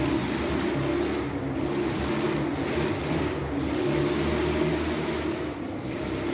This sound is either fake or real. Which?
real